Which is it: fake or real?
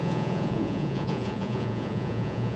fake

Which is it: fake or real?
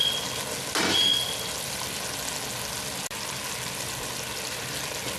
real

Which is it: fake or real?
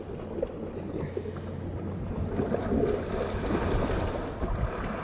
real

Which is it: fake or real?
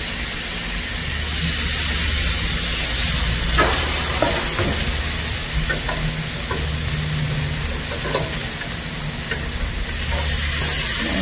real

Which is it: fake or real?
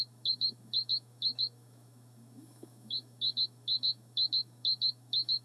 fake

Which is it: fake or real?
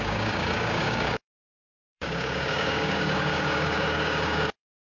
fake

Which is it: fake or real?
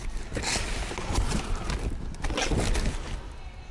real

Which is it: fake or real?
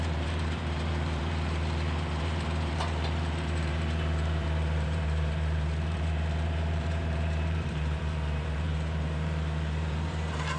fake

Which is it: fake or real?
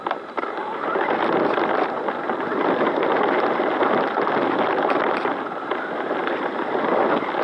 real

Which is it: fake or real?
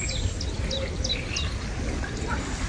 real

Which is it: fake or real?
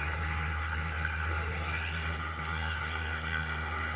fake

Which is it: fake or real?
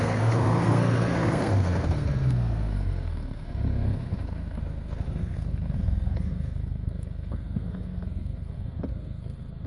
fake